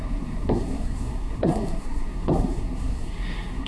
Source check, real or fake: fake